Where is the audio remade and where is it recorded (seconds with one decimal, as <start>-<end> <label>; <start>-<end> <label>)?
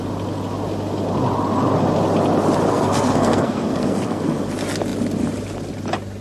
0.0-2.7 recorded; 2.7-4.5 remade; 4.5-6.2 recorded